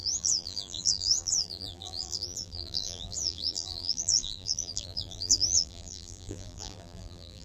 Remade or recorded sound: remade